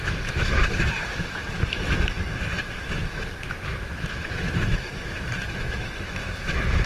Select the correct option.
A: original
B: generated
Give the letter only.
B